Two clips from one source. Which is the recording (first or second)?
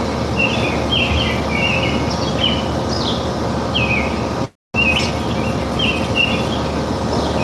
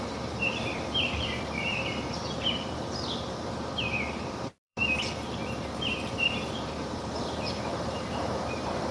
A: first